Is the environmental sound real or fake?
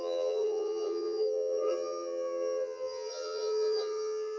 fake